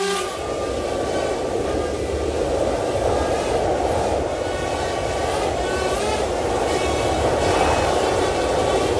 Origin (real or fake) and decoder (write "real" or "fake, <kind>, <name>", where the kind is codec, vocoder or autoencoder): real